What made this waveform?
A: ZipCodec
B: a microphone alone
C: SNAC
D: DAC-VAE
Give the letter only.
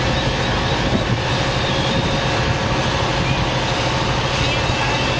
B